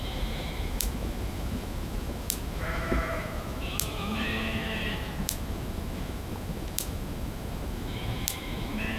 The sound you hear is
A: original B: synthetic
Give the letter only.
B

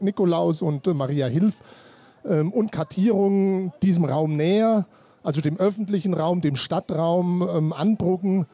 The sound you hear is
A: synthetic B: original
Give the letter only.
B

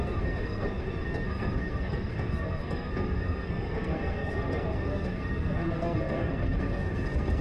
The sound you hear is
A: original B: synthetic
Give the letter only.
B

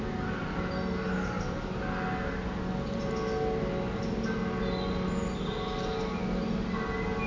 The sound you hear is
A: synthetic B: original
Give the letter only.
B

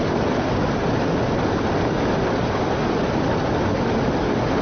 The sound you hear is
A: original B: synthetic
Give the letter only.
A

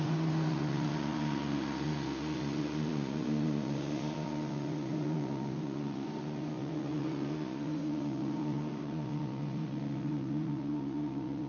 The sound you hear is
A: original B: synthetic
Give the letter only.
B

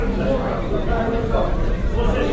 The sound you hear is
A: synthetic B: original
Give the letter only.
B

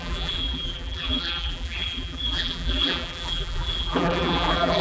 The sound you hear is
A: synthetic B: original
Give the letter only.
A